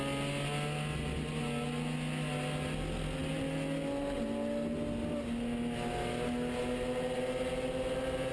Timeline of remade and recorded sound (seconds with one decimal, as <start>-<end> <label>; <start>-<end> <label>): 0.0-8.3 recorded